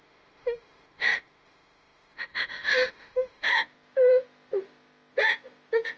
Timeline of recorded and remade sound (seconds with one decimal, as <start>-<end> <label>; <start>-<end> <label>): 0.0-3.5 remade; 3.5-6.0 recorded